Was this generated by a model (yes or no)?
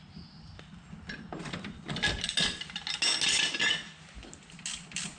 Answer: no